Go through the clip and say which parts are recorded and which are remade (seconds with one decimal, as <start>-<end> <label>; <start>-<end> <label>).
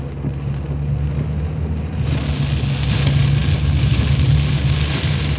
0.0-5.4 recorded